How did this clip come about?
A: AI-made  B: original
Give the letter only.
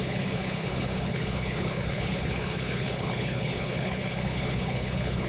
A